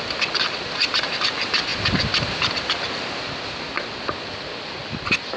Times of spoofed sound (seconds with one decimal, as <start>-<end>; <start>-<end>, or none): none